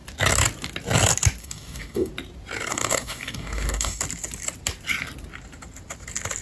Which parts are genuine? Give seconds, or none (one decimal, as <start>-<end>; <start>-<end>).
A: 0.0-1.4; 2.1-2.7; 4.0-6.4